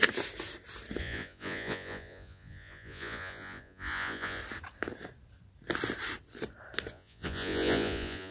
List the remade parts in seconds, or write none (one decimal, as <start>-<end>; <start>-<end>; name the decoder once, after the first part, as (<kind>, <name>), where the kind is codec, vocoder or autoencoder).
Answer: 1.0-4.4 (vocoder, Vocos); 6.9-8.3